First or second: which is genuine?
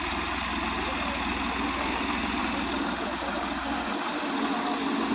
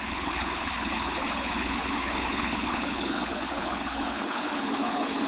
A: first